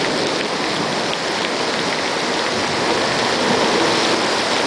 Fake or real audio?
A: real